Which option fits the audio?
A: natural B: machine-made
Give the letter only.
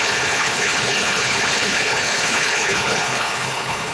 B